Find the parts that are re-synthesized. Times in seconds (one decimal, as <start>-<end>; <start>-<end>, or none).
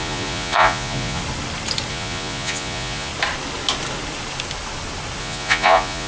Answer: 0.0-1.2; 1.9-3.1; 5.2-6.1